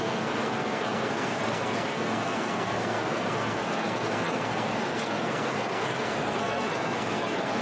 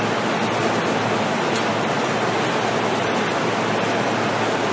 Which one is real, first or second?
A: second